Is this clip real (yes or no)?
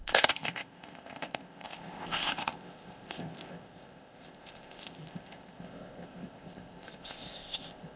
no